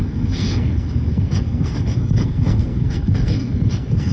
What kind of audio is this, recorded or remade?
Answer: remade